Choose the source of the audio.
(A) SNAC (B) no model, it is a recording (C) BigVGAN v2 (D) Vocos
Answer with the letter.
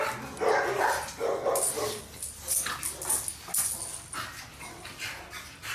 B